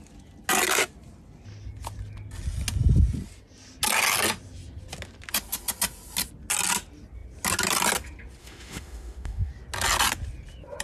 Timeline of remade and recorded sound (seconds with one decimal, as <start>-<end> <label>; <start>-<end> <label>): 0.0-8.4 recorded; 8.4-9.5 remade; 9.5-10.8 recorded